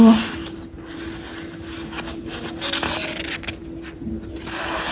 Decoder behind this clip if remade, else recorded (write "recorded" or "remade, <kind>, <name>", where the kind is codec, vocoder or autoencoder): recorded